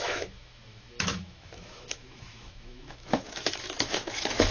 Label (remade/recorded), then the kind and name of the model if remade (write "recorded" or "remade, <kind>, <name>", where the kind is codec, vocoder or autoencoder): remade, autoencoder, DAC-VAE